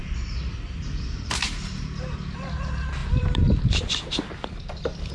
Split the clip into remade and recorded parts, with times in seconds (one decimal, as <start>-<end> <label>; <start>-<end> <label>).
0.0-1.8 remade; 1.8-3.0 recorded; 3.0-5.1 remade